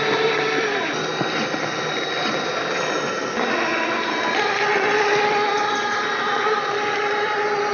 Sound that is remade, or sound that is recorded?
recorded